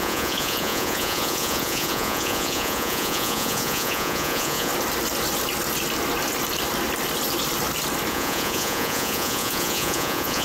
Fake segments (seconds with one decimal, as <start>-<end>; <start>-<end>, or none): 0.0-4.7; 8.1-10.4